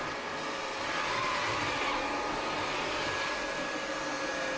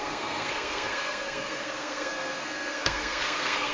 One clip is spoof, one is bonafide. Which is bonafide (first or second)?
first